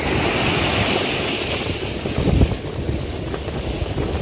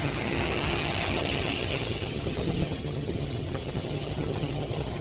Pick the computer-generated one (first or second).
second